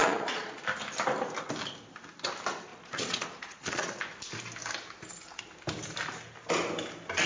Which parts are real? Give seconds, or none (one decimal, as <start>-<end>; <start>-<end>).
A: 0.6-2.7; 4.0-7.3